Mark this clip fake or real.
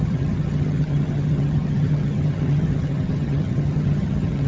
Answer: fake